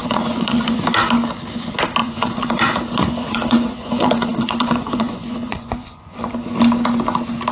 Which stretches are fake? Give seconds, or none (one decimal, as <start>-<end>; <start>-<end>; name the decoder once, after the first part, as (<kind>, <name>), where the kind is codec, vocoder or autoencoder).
0.0-0.8 (vocoder, Vocos); 2.0-6.3